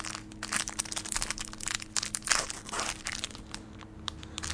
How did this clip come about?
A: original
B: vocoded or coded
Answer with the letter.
A